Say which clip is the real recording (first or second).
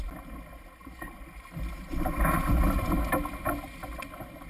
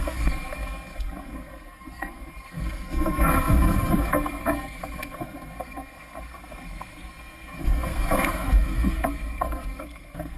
first